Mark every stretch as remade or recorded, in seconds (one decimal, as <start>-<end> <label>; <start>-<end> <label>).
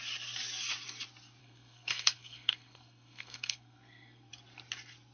0.0-1.4 recorded; 1.4-4.3 remade; 4.3-5.1 recorded